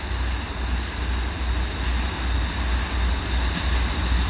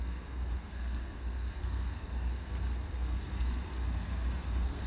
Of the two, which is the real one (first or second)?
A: first